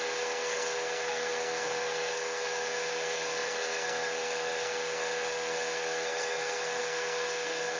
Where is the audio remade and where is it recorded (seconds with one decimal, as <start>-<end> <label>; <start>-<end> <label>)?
0.0-7.8 remade